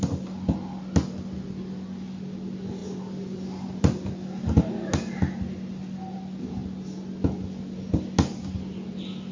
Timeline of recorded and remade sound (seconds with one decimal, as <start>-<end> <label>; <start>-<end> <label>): 0.0-2.8 recorded; 2.8-4.1 remade; 4.1-9.3 recorded